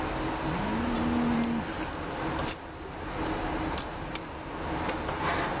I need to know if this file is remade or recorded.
recorded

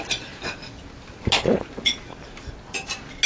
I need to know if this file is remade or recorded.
recorded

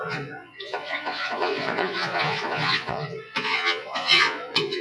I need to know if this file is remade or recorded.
remade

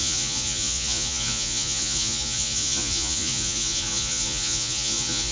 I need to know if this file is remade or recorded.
remade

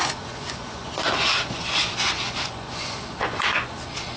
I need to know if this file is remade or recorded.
remade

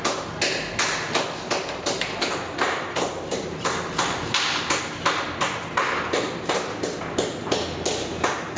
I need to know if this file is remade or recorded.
recorded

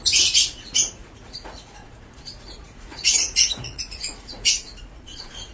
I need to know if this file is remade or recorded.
remade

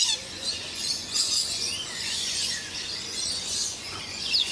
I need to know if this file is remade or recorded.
remade